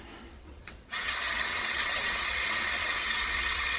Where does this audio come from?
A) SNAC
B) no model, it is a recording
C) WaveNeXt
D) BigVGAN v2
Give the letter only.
C